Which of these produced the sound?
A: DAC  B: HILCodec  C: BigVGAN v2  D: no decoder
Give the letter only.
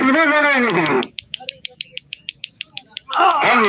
A